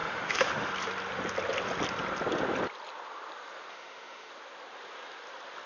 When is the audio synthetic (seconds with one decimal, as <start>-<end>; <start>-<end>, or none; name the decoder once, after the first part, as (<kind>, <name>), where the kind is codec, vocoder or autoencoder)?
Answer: 0.0-0.7 (autoencoder, DAC-VAE); 3.7-4.3